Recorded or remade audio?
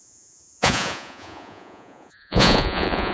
remade